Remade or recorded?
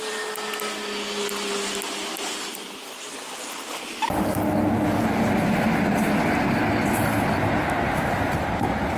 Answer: recorded